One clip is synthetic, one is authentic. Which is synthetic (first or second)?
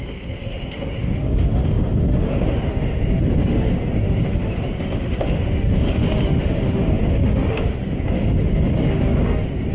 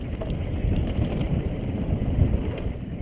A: first